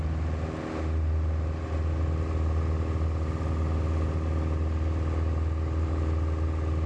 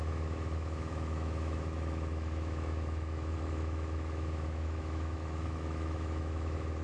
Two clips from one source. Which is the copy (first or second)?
second